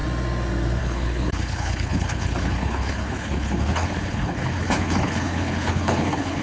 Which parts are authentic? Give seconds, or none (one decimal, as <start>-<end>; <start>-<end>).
0.0-0.8